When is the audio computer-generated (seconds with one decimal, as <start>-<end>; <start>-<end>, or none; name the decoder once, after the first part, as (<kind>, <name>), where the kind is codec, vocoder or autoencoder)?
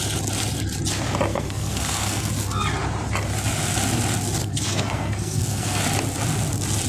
1.3-2.3 (codec, SNAC); 4.4-5.8